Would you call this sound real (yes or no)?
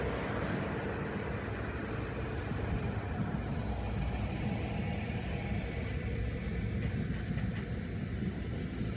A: yes